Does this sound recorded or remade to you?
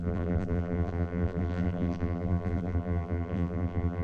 remade